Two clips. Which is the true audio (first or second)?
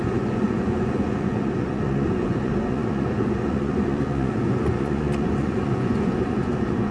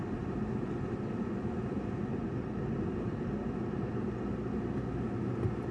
second